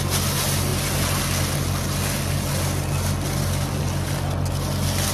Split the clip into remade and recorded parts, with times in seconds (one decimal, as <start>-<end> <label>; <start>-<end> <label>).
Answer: 0.0-5.1 recorded